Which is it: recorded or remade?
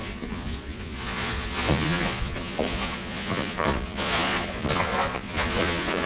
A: remade